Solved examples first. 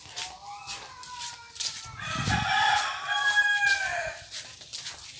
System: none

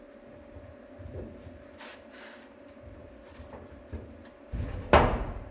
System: none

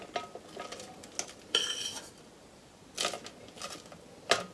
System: none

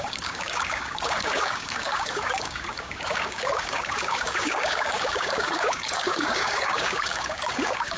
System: codec, DAC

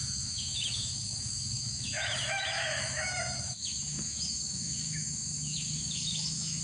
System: autoencoder, DAC-VAE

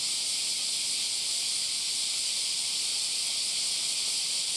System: none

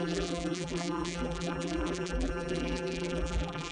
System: vocoder, BigVGAN v2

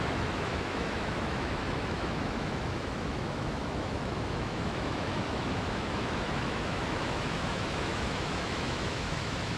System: autoencoder, DAC-VAE